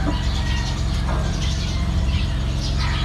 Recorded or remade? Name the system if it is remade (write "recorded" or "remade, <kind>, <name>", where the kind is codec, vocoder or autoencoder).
recorded